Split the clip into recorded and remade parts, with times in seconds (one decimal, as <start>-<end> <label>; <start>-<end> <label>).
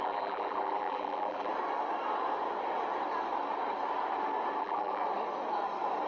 0.0-1.5 remade; 1.5-4.6 recorded; 4.6-5.0 remade; 5.0-6.1 recorded